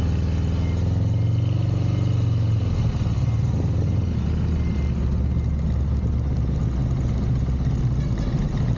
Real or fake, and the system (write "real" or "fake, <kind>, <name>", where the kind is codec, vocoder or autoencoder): real